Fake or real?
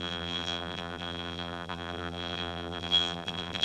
fake